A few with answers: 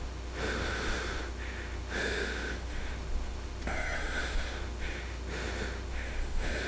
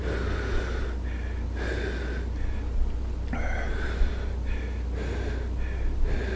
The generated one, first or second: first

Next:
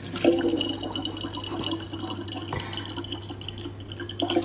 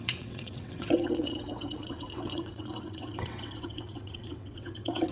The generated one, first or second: second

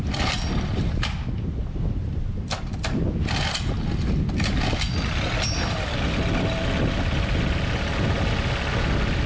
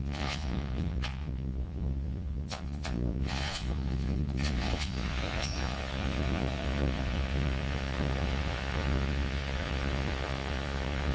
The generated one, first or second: second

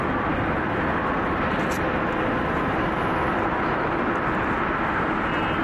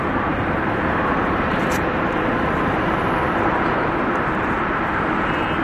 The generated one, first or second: second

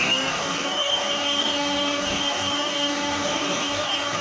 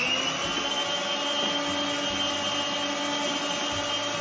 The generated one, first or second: first